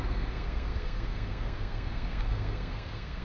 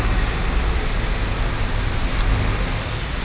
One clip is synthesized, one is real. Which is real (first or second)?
second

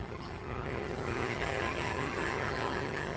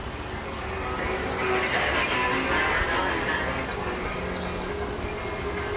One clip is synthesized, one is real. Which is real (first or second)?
second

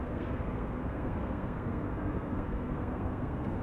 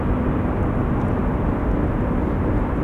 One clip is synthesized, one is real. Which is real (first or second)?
second